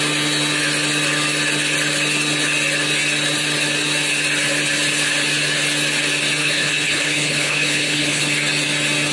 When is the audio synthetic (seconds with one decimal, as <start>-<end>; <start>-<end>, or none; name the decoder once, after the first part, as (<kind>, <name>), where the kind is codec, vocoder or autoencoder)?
6.4-8.3 (codec, HILCodec)